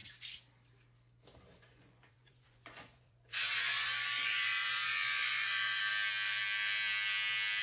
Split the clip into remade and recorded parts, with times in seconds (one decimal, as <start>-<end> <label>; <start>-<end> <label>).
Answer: 0.0-1.7 recorded; 1.7-5.8 remade; 5.8-7.6 recorded